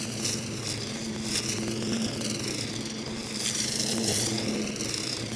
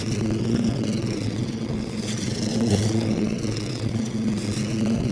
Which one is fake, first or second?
second